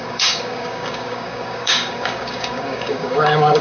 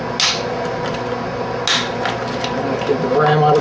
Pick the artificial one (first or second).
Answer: first